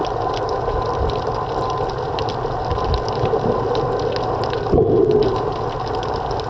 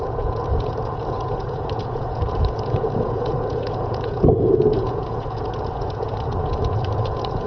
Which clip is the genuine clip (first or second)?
first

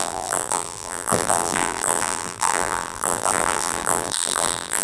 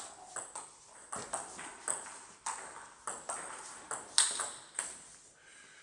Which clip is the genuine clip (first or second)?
second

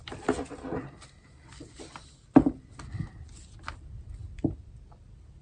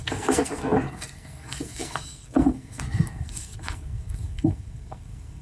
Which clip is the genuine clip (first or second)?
first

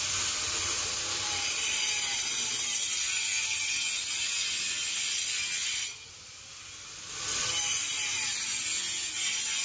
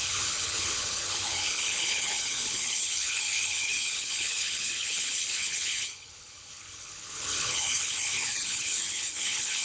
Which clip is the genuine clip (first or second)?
first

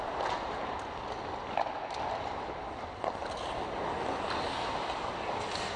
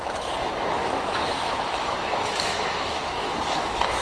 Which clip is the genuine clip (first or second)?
first